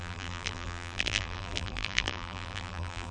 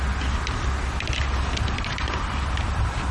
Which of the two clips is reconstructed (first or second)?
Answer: first